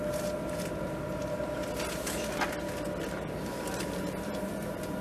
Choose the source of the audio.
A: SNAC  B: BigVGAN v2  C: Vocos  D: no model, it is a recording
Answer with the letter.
D